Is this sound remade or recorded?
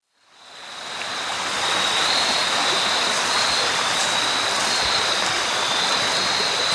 recorded